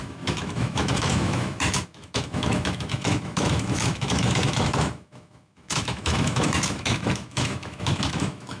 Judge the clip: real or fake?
fake